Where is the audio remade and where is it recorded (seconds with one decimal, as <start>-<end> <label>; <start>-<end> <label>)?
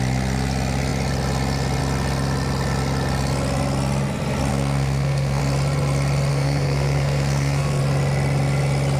0.0-4.5 recorded; 4.5-5.4 remade; 5.4-6.3 recorded; 6.3-7.8 remade; 7.8-9.0 recorded